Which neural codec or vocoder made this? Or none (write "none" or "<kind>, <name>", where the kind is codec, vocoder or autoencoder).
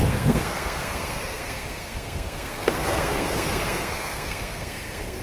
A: codec, SNAC